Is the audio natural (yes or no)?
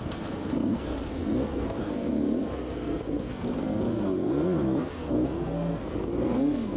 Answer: no